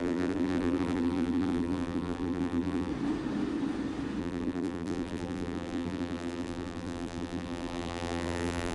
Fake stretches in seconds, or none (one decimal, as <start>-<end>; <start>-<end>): 0.0-2.9; 4.2-8.7

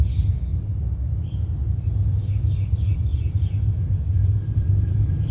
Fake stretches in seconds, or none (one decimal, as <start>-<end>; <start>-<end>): 0.0-5.3

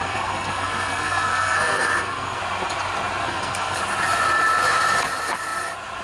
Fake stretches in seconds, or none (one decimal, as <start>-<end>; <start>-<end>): 0.0-2.4; 3.2-3.8

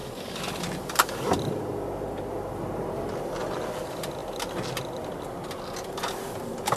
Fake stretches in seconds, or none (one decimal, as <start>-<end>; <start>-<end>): 0.0-2.6

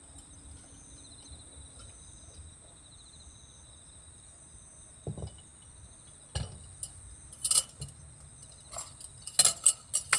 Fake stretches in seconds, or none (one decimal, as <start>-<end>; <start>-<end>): none

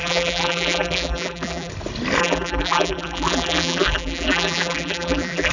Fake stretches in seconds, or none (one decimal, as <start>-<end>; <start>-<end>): 0.0-1.7; 2.2-5.5

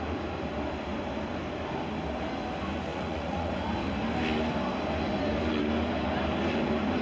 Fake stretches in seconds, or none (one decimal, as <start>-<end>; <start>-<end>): 2.9-3.5

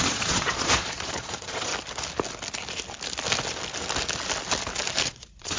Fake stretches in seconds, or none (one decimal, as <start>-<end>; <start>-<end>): 0.0-1.7; 5.1-5.6